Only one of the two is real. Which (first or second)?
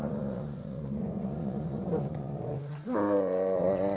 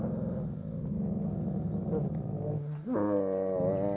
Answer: second